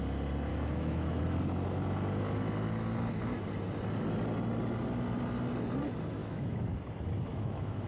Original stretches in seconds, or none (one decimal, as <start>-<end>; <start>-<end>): 0.0-0.5; 1.2-6.2; 6.7-7.3